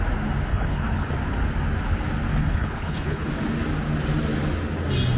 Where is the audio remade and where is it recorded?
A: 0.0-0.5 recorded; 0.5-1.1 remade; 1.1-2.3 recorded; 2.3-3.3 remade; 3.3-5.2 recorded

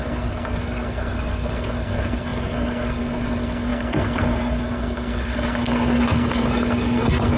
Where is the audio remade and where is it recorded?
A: 0.0-7.4 remade

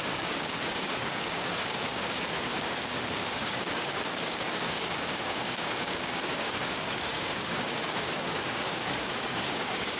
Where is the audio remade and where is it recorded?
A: 0.0-10.0 remade